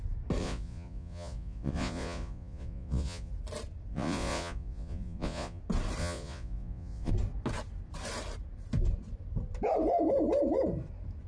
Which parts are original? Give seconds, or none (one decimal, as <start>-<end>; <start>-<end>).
0.0-0.4; 3.3-3.9; 5.6-6.0; 7.1-11.3